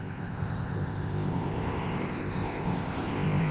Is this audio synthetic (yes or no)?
yes